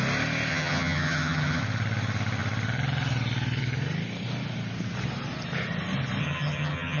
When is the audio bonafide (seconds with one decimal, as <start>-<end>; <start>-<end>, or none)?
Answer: 0.0-0.5; 1.6-6.2